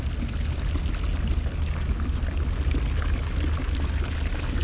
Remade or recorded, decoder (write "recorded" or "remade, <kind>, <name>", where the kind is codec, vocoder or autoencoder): recorded